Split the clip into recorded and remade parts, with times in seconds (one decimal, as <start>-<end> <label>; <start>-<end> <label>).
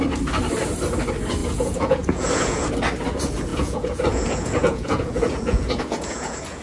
0.0-1.4 recorded; 1.4-2.7 remade; 2.7-3.5 recorded; 3.5-6.6 remade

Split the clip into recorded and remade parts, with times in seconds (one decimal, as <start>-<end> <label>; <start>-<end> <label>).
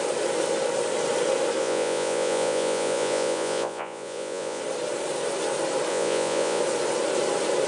0.0-1.6 recorded; 1.6-4.6 remade; 4.6-5.9 recorded; 5.9-6.6 remade; 6.6-7.7 recorded